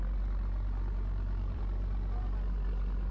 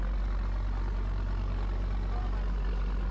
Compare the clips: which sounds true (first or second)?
second